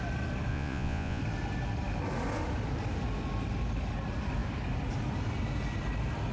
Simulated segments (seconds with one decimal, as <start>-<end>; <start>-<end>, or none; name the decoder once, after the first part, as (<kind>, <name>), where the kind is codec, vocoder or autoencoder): 0.5-1.2 (vocoder, Vocos)